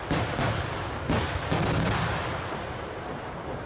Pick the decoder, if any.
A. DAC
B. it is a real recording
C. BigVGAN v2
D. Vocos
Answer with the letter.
B